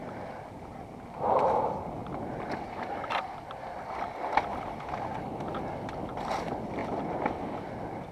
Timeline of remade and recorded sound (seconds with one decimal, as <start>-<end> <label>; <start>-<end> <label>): 0.0-8.1 recorded

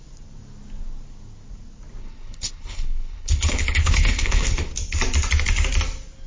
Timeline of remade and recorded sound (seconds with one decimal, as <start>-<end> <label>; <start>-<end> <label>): 0.0-2.0 recorded; 2.0-4.7 remade; 4.7-6.3 recorded

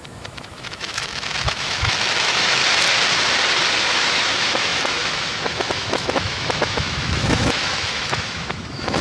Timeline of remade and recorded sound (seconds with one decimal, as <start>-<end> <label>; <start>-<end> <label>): 0.0-2.6 remade; 2.6-3.8 recorded; 3.8-9.0 remade

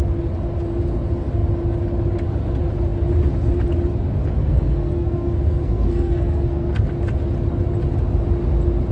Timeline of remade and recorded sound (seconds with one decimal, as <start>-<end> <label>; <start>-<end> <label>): 0.0-4.4 recorded; 4.4-6.9 remade; 6.9-8.9 recorded

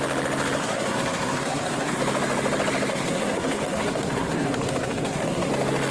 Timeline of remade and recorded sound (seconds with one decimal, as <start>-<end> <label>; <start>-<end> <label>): 0.0-0.6 recorded; 0.6-2.0 remade; 2.0-2.9 recorded; 2.9-5.5 remade; 5.5-5.9 recorded

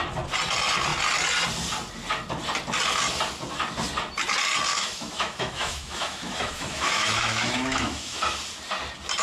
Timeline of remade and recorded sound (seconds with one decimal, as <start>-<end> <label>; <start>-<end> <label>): 0.0-4.7 recorded; 4.7-8.2 remade; 8.2-9.2 recorded

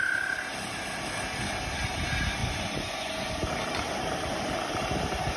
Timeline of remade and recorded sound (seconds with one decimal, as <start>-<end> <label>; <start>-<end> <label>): 0.0-2.4 recorded; 2.4-3.3 remade; 3.3-5.4 recorded